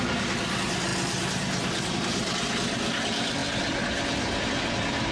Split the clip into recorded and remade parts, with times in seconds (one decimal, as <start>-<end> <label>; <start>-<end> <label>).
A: 0.0-5.1 recorded